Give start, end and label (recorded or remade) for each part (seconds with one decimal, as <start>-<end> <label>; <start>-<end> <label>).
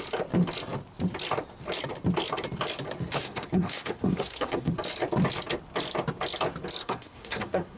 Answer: 0.0-3.1 recorded; 3.1-4.7 remade; 4.7-6.8 recorded; 6.8-7.8 remade